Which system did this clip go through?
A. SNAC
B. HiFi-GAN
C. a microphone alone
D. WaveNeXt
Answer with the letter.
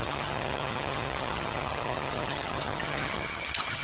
B